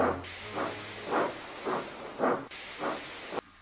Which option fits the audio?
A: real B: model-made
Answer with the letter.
A